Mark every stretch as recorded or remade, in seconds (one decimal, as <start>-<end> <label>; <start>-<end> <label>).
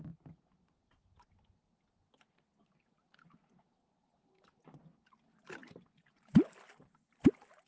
0.0-7.7 recorded